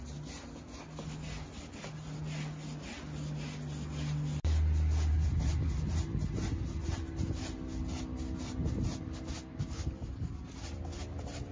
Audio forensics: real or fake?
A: real